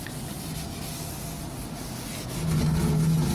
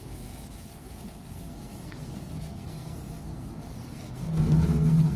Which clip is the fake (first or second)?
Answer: second